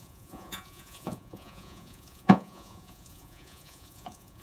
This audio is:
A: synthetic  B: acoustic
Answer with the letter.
A